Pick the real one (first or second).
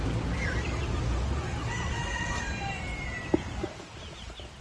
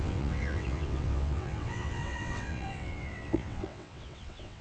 first